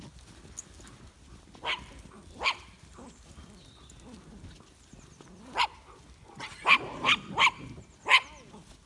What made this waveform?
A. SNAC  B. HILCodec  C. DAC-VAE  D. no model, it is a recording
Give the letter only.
D